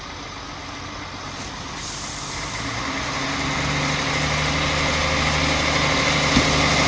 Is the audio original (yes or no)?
yes